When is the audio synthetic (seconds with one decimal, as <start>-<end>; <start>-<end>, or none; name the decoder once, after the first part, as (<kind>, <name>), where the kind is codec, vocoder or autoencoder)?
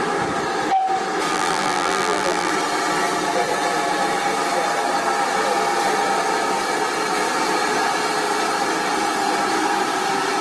1.3-2.5 (vocoder, BigVGAN v2)